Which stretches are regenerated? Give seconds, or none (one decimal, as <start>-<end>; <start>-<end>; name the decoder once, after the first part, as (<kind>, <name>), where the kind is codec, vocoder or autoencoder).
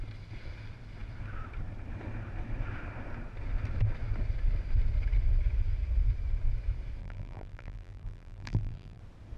7.0-9.0 (vocoder, BigVGAN v2)